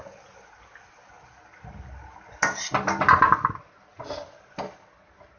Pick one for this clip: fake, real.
real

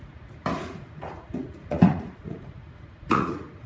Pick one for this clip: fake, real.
fake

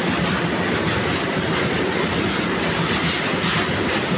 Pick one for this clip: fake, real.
real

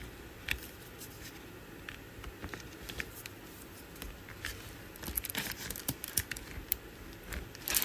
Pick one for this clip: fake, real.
real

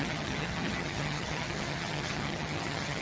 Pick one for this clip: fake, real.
fake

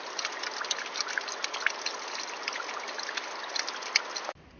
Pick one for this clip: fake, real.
real